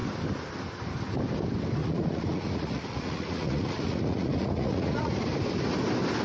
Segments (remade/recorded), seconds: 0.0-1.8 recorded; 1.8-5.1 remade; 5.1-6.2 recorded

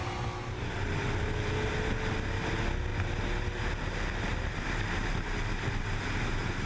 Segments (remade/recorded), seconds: 0.0-6.7 recorded